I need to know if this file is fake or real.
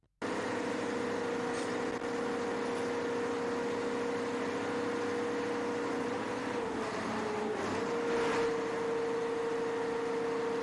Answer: real